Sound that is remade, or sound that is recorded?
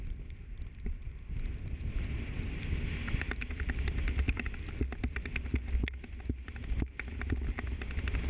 recorded